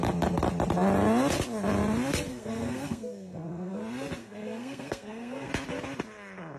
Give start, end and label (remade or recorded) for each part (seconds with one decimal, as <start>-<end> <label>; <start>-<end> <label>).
0.0-2.3 recorded; 2.3-3.8 remade; 3.8-4.2 recorded; 4.2-5.5 remade; 5.5-6.6 recorded